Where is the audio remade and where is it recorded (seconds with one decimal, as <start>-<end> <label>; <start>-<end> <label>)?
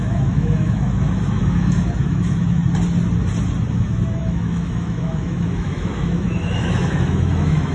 0.0-2.6 remade; 2.6-3.7 recorded; 3.7-7.7 remade